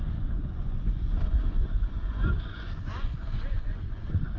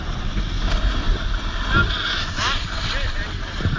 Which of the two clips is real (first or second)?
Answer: second